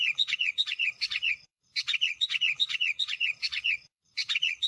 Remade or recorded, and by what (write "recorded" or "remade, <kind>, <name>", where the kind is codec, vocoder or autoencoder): remade, vocoder, Vocos